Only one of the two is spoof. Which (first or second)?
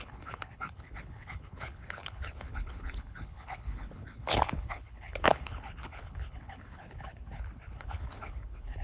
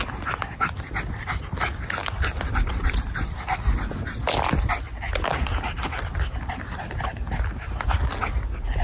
first